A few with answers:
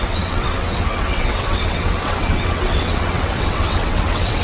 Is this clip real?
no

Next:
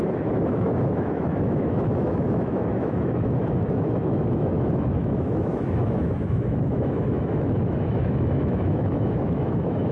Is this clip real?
no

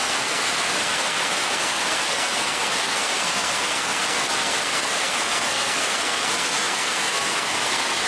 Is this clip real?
no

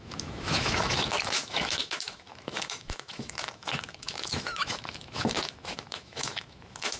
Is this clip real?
no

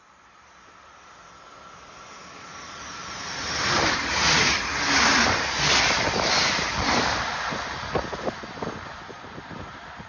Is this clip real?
yes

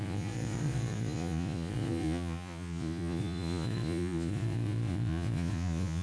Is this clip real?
no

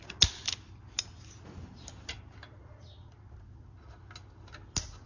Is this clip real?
yes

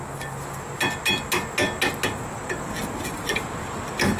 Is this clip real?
yes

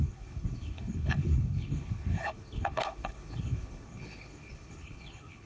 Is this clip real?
no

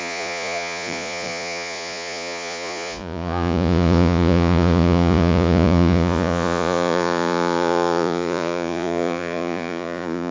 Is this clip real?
no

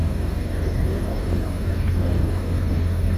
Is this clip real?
no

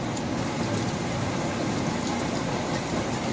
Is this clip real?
yes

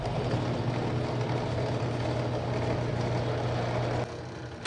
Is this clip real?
yes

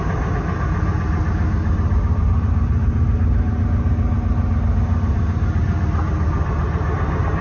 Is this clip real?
yes